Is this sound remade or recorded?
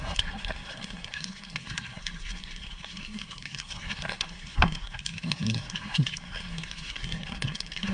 remade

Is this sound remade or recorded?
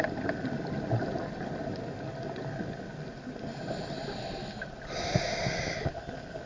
recorded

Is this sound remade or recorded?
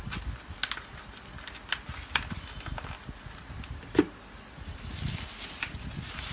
recorded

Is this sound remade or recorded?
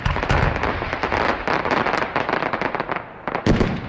recorded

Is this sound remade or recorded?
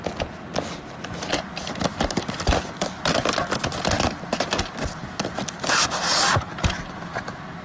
recorded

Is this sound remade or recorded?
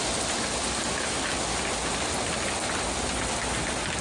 recorded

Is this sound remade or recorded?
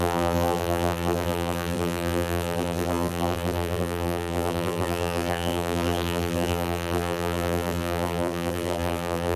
remade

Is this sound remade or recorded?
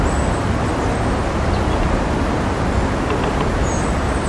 recorded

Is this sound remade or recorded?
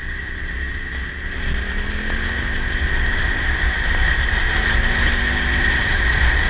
recorded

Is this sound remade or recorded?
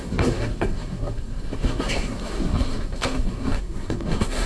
remade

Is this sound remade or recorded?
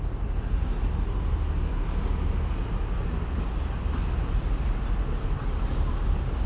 recorded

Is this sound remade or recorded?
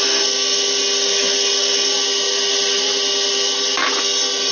recorded